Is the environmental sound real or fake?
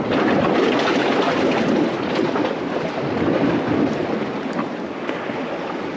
real